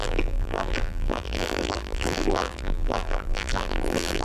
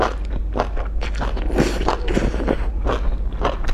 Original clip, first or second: second